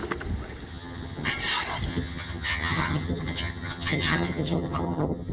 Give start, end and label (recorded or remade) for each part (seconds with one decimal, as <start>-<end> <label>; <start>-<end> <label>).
0.0-0.7 recorded; 0.7-1.3 remade; 1.3-1.9 recorded; 1.9-5.3 remade